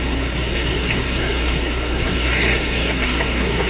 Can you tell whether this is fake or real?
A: fake